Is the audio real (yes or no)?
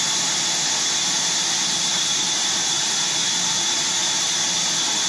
yes